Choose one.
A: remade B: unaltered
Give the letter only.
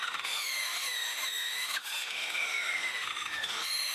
A